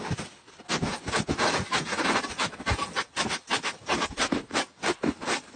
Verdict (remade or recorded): recorded